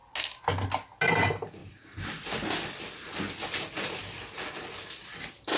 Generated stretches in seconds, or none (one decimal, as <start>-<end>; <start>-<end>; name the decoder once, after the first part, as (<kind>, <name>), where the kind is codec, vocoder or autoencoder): 1.6-4.0 (vocoder, BigVGAN v2)